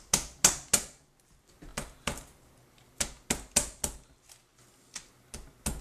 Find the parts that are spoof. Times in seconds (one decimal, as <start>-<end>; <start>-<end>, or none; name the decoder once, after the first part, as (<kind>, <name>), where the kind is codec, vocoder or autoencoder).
4.5-5.1 (vocoder, BigVGAN v2)